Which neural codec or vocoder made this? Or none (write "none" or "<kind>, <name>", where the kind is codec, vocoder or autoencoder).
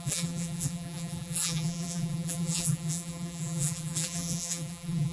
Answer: vocoder, BigVGAN v2